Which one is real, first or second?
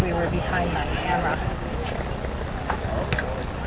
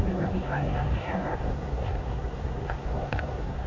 first